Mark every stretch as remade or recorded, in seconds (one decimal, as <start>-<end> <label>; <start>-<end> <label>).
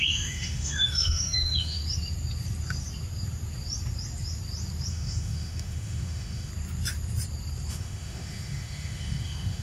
0.0-1.8 remade; 1.8-4.9 recorded; 4.9-6.5 remade; 6.5-7.7 recorded; 7.7-9.6 remade